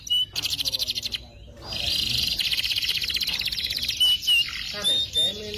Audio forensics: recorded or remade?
recorded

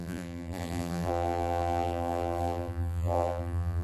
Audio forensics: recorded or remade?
remade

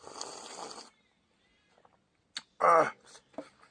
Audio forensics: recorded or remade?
recorded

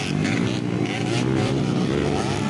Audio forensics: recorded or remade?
recorded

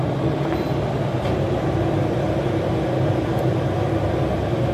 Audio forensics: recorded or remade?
recorded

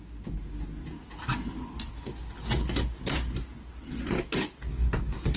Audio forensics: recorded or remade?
recorded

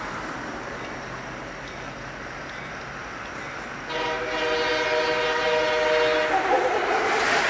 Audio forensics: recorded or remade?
recorded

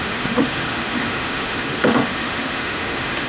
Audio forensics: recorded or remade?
remade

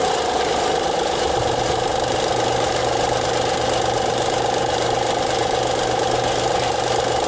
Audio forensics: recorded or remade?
recorded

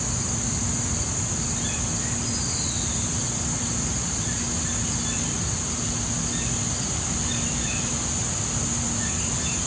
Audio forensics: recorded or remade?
recorded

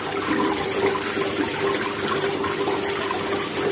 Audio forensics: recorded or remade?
recorded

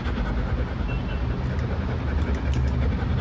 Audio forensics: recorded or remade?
recorded